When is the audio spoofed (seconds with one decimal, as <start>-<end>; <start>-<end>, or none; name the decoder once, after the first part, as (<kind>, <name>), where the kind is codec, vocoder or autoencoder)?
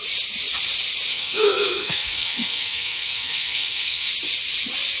1.1-4.1 (codec, SNAC)